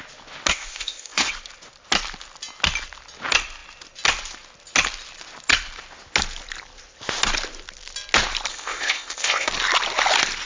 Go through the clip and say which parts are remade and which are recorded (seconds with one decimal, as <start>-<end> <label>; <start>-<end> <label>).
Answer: 0.0-0.5 recorded; 0.5-1.3 remade; 1.3-8.5 recorded; 8.5-9.5 remade; 9.5-10.5 recorded